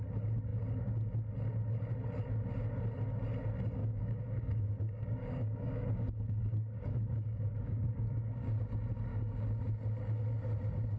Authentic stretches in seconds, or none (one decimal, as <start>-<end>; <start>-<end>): 0.0-3.8; 8.6-9.1; 9.6-11.0